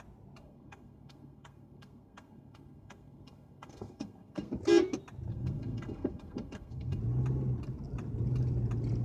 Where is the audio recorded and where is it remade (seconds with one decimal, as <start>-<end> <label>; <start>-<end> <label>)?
0.0-0.4 recorded; 0.4-4.5 remade; 4.5-5.3 recorded; 5.3-7.0 remade; 7.0-9.0 recorded